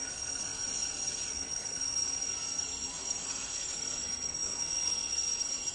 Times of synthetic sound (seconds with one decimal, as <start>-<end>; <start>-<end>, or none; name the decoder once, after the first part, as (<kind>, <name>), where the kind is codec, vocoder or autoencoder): 0.0-5.7 (codec, SNAC)